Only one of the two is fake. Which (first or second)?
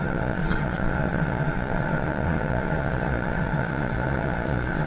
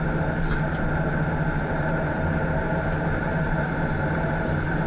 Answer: first